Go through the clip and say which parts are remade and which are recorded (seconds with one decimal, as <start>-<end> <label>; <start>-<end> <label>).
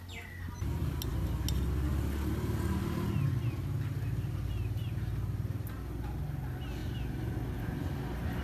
0.0-8.4 recorded